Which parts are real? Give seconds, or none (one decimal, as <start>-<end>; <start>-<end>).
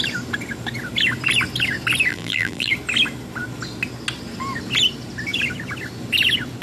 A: 0.0-2.1; 2.7-6.6